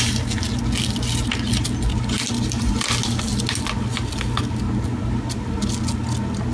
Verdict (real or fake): real